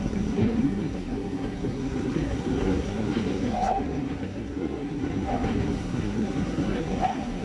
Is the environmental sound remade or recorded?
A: remade